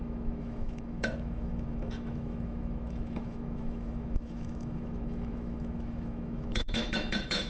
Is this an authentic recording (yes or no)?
no